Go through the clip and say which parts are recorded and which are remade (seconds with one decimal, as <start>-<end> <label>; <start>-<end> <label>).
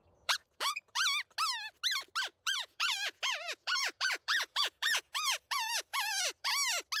0.0-1.0 remade; 1.0-2.3 recorded; 2.3-6.5 remade; 6.5-7.0 recorded